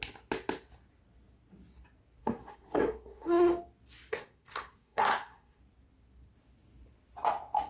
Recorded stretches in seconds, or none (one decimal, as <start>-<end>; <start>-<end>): 0.0-2.2; 3.5-4.1; 5.6-7.7

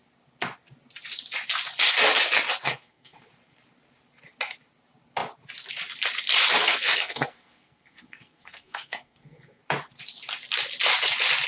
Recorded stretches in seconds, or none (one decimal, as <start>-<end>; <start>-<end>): 0.0-2.6; 3.3-6.6; 9.6-11.5

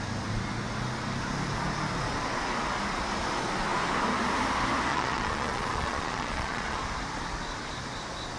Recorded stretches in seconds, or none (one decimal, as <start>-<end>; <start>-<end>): 0.0-4.9; 6.8-8.4

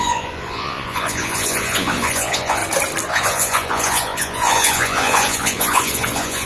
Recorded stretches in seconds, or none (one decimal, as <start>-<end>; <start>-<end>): 2.6-3.1

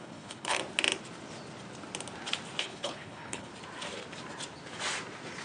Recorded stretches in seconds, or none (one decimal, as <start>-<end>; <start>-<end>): 0.6-2.6; 3.5-5.4

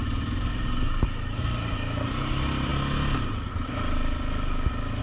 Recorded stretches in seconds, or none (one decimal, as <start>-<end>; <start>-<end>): 2.7-5.0

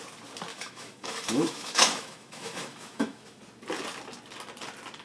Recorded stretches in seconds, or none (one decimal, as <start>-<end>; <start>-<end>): 0.0-0.5; 3.4-5.0